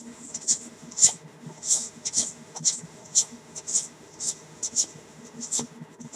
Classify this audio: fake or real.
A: fake